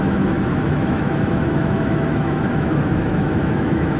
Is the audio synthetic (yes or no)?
yes